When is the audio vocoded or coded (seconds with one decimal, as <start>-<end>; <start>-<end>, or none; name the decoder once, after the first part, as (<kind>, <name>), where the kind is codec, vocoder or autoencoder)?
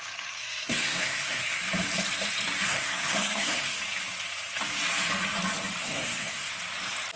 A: 0.4-1.6 (codec, SNAC); 2.6-3.8; 5.8-6.5